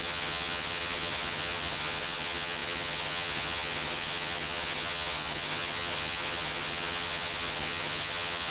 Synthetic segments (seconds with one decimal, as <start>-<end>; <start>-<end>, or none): 0.0-8.5